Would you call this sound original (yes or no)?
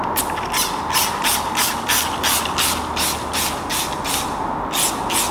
yes